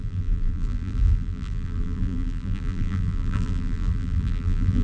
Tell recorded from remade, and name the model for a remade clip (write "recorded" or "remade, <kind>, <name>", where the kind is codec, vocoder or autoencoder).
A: remade, vocoder, BigVGAN v2